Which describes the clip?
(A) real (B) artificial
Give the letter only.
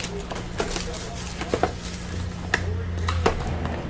A